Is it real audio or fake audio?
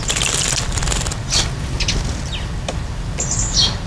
real